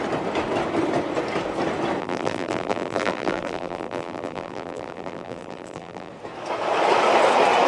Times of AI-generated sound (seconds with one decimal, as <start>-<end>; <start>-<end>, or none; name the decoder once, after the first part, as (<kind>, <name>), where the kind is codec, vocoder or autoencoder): 2.0-6.1 (vocoder, BigVGAN v2)